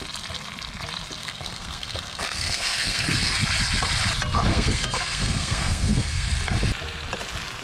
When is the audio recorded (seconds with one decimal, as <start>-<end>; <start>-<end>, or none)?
0.0-1.2; 3.4-4.5; 6.3-7.6